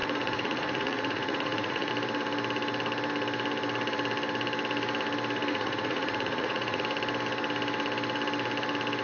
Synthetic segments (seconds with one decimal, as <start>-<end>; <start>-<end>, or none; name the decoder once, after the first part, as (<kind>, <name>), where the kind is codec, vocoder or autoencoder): 0.0-1.9 (vocoder, Vocos); 5.5-6.8

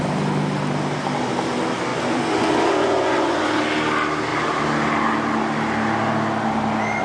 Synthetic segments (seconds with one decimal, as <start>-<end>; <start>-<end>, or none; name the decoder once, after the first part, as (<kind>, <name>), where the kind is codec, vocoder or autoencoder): 1.9-3.6 (vocoder, Vocos)

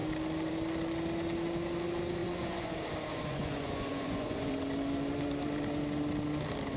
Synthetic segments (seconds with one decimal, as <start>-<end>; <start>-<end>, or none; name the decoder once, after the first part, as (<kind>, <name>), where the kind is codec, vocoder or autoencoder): 2.2-2.7 (vocoder, Vocos); 3.1-4.5

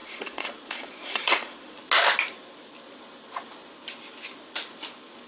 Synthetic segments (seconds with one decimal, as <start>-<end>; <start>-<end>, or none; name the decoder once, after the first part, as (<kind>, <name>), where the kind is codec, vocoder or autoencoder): 0.0-1.8 (vocoder, Vocos)